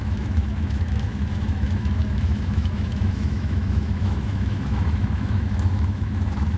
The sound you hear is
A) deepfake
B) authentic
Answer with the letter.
A